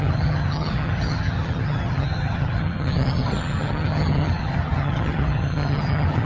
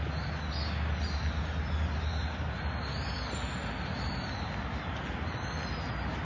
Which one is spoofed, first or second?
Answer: first